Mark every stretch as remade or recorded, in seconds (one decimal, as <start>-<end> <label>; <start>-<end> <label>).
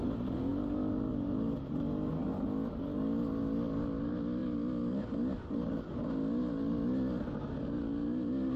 0.0-8.6 recorded